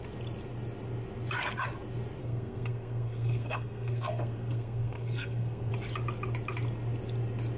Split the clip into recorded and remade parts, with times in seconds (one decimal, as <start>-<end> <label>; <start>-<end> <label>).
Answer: 0.0-2.2 recorded; 2.2-5.7 remade; 5.7-7.6 recorded